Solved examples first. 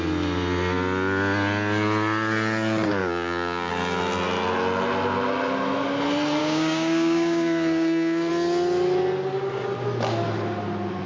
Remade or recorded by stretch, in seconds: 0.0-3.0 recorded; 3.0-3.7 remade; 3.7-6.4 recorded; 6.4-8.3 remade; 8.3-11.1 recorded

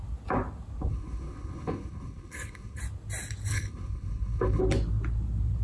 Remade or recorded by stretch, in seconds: 0.0-0.9 recorded; 0.9-2.8 remade; 2.8-3.5 recorded; 3.5-4.6 remade; 4.6-5.6 recorded

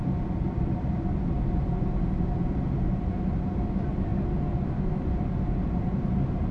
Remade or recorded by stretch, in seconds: 0.0-6.5 recorded

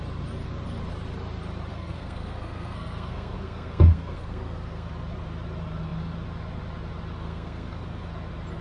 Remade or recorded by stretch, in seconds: 0.0-1.7 recorded; 1.7-4.9 remade; 4.9-7.2 recorded; 7.2-8.1 remade; 8.1-8.6 recorded

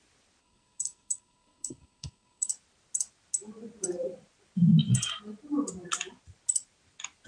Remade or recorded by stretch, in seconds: 0.0-0.4 recorded; 0.4-2.5 remade; 2.5-7.3 recorded

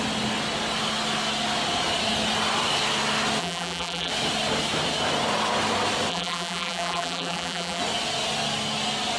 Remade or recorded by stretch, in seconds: 0.0-3.4 recorded; 3.4-4.1 remade; 4.1-6.1 recorded; 6.1-7.8 remade; 7.8-9.2 recorded